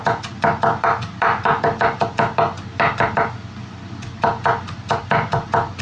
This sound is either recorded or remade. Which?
recorded